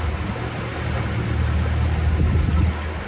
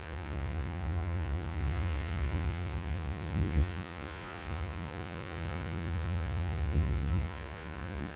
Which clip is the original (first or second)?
first